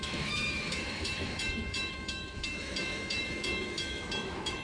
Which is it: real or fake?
fake